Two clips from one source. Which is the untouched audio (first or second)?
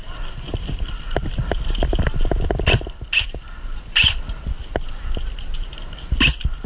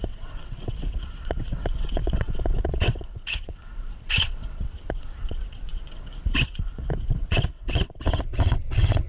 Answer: first